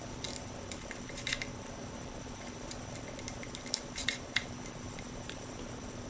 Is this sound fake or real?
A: fake